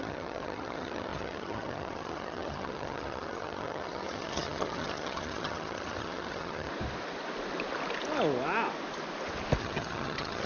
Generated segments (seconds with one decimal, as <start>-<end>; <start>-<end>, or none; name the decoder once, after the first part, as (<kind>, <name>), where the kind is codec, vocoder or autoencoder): 0.0-6.7 (vocoder, HiFi-GAN); 9.6-10.5